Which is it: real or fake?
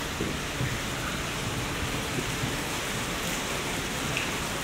real